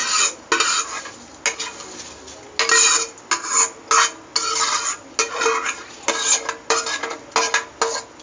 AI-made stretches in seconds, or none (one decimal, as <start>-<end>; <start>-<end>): none

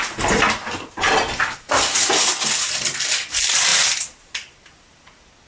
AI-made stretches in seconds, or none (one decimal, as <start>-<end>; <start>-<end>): none